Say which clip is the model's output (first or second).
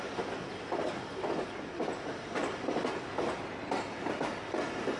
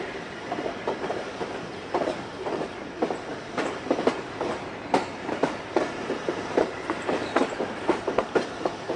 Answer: second